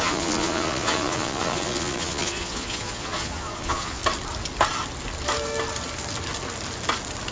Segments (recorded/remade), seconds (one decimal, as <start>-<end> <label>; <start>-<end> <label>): 0.0-4.0 remade; 4.0-7.3 recorded